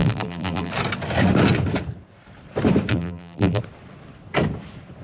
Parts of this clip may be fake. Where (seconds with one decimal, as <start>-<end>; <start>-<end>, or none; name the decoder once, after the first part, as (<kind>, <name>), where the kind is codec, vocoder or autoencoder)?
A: 0.0-0.7 (vocoder, BigVGAN v2); 2.9-3.6